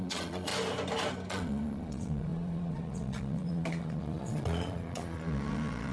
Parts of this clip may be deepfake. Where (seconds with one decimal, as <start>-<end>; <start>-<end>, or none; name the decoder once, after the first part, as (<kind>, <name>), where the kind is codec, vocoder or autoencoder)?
0.0-0.5 (vocoder, Vocos); 1.3-5.9